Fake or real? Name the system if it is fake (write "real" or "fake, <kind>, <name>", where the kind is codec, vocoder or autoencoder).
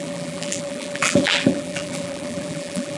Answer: fake, vocoder, BigVGAN v2